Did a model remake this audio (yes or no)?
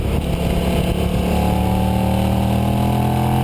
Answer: no